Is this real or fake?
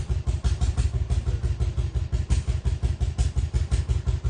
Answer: real